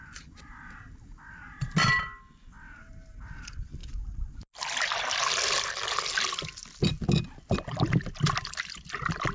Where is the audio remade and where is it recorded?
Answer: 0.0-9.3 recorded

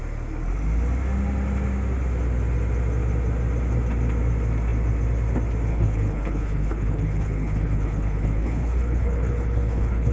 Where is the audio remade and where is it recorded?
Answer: 0.0-5.7 recorded; 5.7-10.1 remade